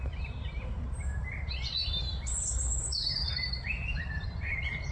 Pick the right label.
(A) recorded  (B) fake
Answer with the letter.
B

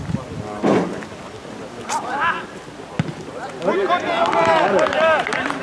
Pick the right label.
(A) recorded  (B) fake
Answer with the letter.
A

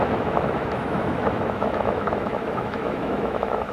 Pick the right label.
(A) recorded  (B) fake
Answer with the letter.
B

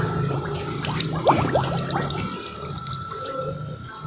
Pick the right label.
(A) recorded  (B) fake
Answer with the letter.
A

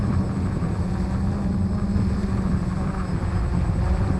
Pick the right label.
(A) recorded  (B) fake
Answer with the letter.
A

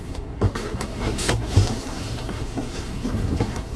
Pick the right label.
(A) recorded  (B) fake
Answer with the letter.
B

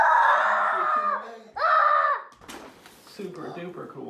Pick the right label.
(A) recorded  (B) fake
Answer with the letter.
A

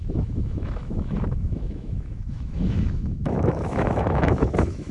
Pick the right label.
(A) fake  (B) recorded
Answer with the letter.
A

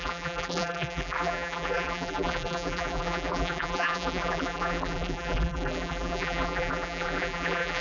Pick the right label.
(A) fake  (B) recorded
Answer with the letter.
A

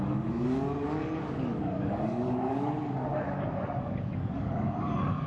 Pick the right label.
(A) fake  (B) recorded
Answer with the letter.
A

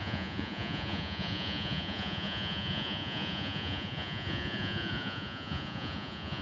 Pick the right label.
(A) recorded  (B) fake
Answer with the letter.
B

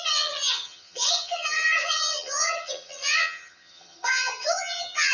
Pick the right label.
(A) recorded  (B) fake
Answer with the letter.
B